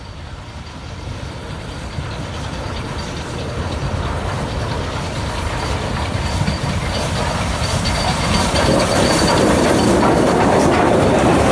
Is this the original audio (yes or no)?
no